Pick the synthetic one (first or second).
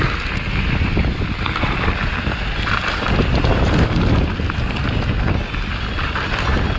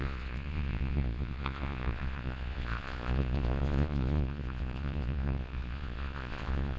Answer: second